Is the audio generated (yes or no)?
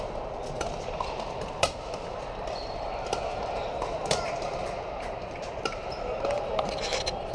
yes